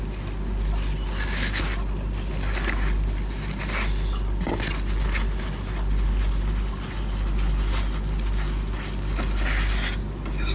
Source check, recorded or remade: recorded